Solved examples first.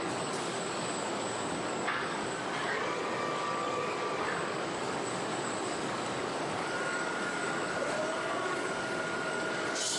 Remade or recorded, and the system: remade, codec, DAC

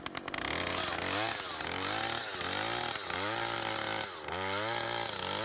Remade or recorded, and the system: recorded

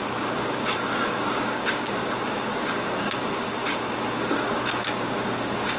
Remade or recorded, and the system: remade, codec, DAC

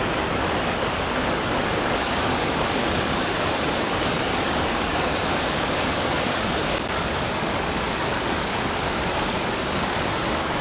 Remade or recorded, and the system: remade, codec, DAC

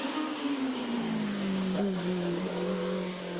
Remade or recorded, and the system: remade, codec, DAC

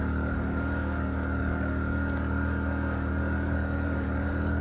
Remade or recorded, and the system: remade, codec, DAC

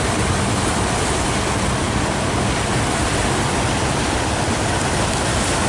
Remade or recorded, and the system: recorded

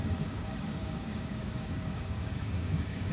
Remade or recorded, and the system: remade, codec, DAC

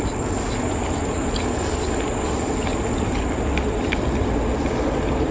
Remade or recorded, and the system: recorded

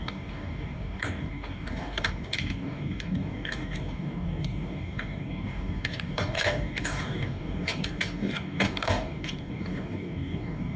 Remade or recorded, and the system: remade, codec, DAC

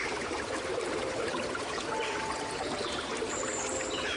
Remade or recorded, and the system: recorded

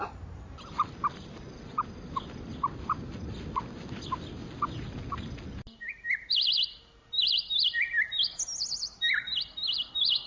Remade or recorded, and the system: recorded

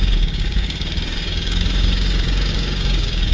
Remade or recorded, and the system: remade, codec, DAC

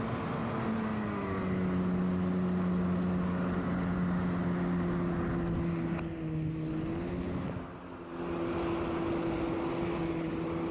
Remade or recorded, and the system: recorded